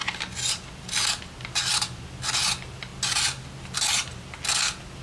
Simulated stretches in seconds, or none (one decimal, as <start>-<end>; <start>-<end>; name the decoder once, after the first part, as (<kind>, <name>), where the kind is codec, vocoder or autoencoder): none